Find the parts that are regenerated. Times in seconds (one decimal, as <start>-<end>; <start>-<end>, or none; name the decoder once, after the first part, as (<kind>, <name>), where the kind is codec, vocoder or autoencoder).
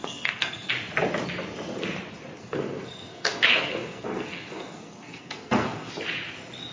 0.0-0.7 (codec, SNAC); 2.4-5.9